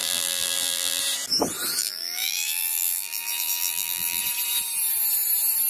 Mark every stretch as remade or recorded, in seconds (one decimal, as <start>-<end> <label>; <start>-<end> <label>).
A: 0.0-1.0 remade; 1.0-1.8 recorded; 1.8-4.2 remade; 4.2-5.7 recorded